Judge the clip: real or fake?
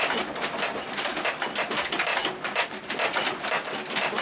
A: real